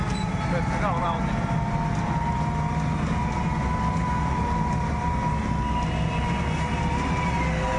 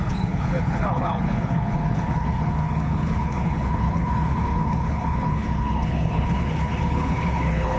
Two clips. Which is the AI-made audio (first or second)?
second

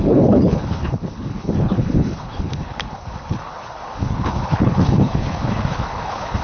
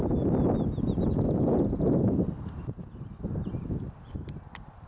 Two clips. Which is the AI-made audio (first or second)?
first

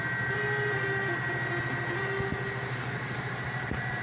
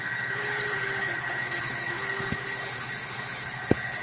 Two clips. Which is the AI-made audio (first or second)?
second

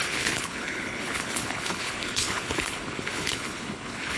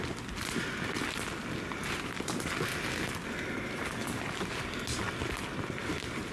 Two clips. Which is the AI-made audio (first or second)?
first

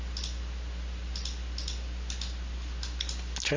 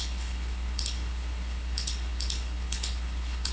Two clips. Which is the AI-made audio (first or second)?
second